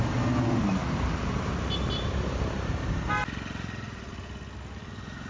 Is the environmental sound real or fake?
real